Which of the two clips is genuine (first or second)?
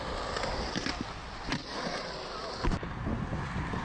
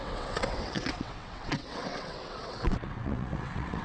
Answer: first